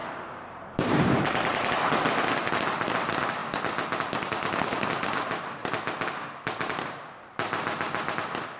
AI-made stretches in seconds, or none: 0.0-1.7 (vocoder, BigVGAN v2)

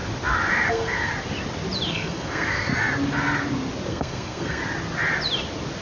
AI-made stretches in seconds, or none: 0.7-1.1 (codec, SNAC); 1.9-2.7; 3.9-4.6

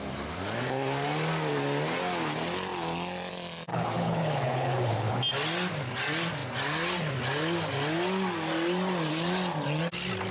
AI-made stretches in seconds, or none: 3.7-5.2 (codec, HILCodec)